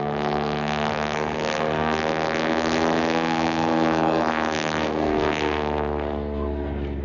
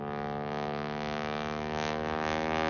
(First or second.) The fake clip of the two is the first